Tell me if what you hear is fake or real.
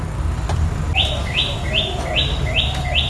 real